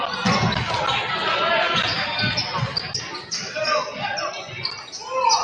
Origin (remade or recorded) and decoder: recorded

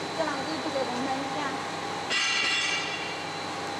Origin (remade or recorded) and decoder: recorded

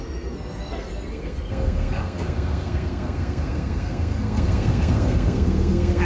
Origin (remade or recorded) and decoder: remade, codec, SNAC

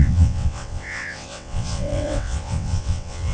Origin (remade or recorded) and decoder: remade, vocoder, WaveNeXt